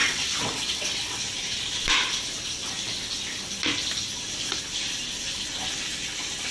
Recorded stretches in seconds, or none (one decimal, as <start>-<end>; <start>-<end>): 1.2-6.5